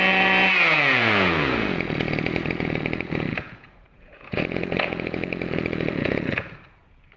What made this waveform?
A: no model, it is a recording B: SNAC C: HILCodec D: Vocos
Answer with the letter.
D